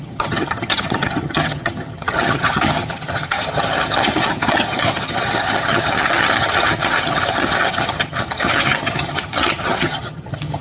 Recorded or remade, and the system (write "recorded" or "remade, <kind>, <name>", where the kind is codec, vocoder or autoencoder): remade, vocoder, HiFi-GAN